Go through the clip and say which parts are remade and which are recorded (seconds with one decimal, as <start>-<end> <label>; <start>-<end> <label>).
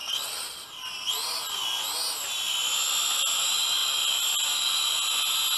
0.0-5.6 recorded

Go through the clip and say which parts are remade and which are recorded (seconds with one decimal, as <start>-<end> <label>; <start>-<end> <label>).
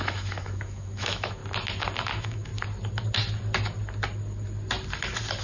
0.0-1.4 remade; 1.4-2.0 recorded; 2.0-2.5 remade; 2.5-5.4 recorded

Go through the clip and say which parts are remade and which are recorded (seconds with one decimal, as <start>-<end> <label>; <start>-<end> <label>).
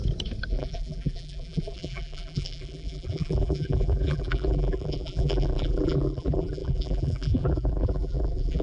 0.0-0.5 recorded; 0.5-8.6 remade